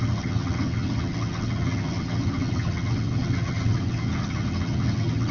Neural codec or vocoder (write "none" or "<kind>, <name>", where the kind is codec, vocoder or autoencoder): vocoder, HiFi-GAN